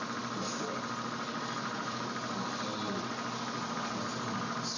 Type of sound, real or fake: real